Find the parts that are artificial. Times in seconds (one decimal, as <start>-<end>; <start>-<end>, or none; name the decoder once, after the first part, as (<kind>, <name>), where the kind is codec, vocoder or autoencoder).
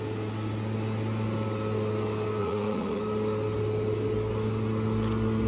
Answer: 2.4-3.0 (vocoder, Vocos)